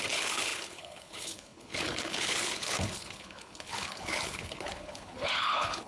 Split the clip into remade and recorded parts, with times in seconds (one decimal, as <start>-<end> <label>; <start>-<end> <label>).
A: 0.0-5.9 remade